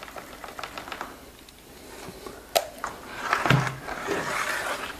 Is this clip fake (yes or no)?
no